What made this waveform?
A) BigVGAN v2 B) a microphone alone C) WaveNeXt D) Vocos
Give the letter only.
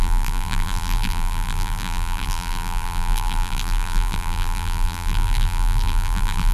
A